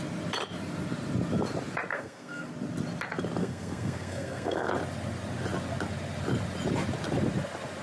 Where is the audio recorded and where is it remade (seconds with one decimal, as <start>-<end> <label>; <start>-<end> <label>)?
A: 0.0-1.9 recorded; 1.9-2.5 remade; 2.5-3.4 recorded; 3.4-4.7 remade; 4.7-7.8 recorded